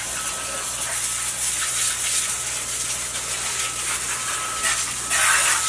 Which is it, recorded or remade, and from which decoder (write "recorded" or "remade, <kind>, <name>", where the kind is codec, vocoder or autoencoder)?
recorded